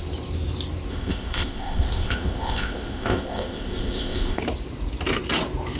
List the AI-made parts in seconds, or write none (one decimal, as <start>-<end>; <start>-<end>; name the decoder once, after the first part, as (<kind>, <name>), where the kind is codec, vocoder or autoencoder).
0.9-4.4 (codec, ZipCodec)